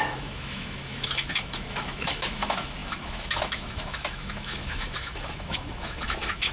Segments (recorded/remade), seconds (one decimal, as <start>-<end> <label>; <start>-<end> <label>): 0.0-6.5 remade